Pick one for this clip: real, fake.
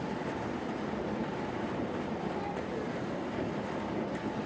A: real